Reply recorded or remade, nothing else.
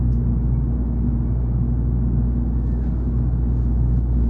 recorded